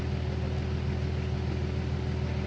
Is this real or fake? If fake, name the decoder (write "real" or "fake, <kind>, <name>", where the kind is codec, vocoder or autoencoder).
real